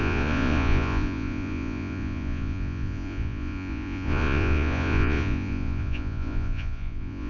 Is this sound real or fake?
fake